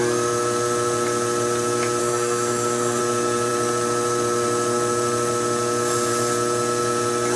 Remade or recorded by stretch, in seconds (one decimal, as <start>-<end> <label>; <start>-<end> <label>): 0.0-2.0 recorded; 2.0-3.0 remade; 3.0-7.4 recorded